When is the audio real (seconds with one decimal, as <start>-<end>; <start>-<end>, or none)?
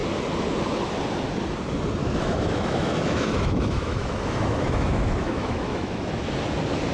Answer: 0.0-2.0; 6.1-6.9